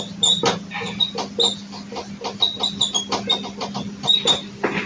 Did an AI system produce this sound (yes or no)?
no